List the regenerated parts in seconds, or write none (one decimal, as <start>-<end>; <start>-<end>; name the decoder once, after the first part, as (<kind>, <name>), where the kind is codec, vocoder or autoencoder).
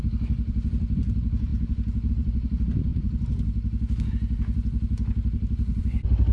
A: 0.0-1.5 (vocoder, BigVGAN v2); 2.1-2.9; 4.1-6.3